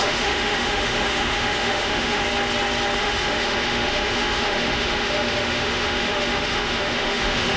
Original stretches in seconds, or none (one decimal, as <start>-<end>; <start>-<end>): 2.2-3.0